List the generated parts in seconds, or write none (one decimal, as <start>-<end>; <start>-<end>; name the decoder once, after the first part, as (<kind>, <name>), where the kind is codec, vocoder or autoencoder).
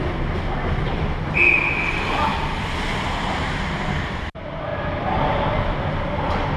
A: 4.7-5.9 (vocoder, BigVGAN v2)